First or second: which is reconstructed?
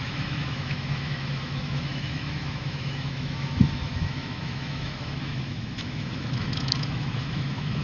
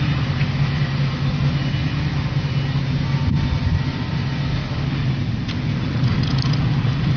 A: first